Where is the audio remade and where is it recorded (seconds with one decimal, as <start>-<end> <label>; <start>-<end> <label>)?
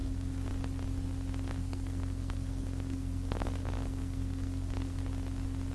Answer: 0.0-0.5 remade; 0.5-1.6 recorded; 1.6-5.0 remade; 5.0-5.7 recorded